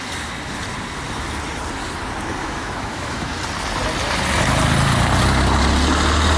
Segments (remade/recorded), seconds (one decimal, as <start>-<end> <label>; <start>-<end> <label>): 0.0-2.4 recorded; 2.4-3.4 remade; 3.4-6.4 recorded